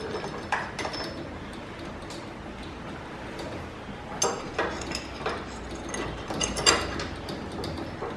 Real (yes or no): yes